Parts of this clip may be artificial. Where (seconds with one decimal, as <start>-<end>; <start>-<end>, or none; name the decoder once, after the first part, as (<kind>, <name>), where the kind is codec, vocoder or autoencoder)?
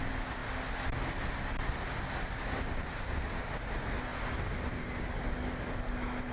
none